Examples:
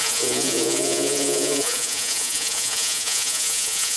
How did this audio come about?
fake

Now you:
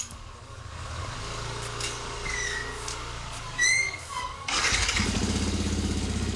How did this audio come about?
fake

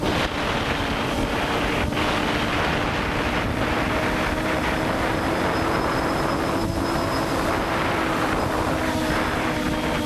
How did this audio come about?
real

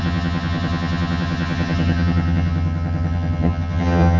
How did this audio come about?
fake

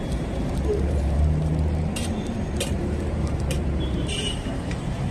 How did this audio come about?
fake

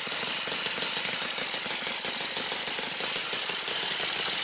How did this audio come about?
real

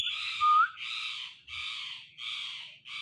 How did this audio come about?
real